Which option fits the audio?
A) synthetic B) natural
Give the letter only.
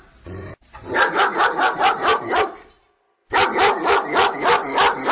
B